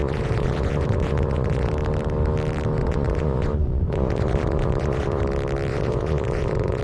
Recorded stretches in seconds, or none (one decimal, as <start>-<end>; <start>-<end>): 1.7-2.8; 5.2-5.7